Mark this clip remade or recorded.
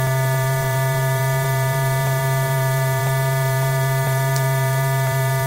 remade